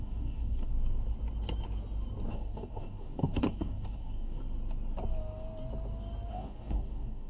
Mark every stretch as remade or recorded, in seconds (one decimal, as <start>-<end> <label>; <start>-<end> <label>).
0.0-0.7 remade; 0.7-2.3 recorded; 2.3-4.4 remade; 4.4-6.3 recorded; 6.3-7.3 remade